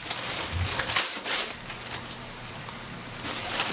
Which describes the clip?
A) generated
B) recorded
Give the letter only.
B